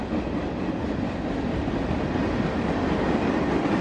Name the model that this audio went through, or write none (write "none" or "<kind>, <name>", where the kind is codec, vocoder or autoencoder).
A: none